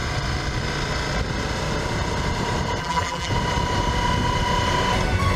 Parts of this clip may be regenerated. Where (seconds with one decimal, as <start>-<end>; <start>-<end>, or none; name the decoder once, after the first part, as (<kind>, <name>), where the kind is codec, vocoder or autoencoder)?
2.8-3.3 (vocoder, BigVGAN v2)

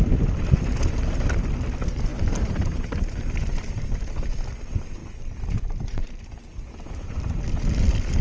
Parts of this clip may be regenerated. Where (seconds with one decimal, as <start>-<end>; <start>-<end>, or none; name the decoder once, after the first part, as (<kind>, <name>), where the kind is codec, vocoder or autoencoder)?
2.1-3.9 (vocoder, BigVGAN v2); 5.0-7.4

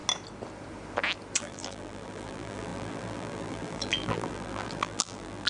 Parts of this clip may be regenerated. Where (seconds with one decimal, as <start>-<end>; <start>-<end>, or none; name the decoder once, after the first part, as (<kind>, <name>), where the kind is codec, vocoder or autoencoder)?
1.4-5.5 (vocoder, BigVGAN v2)

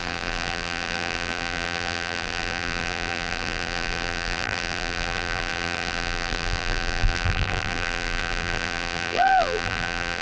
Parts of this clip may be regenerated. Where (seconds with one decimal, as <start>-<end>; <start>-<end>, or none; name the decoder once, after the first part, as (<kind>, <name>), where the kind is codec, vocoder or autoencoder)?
0.0-10.2 (vocoder, BigVGAN v2)